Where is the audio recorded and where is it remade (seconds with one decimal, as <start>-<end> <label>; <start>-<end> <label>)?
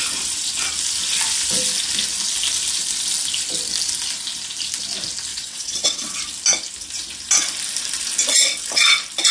0.0-5.3 recorded; 5.3-6.2 remade; 6.2-9.3 recorded